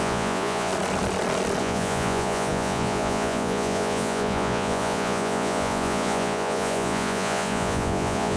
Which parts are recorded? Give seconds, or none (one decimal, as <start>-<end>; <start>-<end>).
0.7-1.6